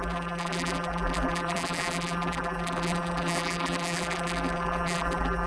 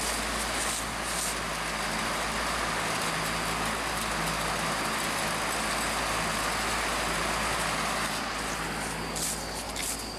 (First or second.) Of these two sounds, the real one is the second